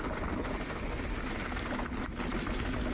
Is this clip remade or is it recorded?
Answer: recorded